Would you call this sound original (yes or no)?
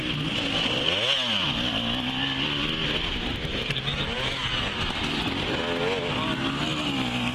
yes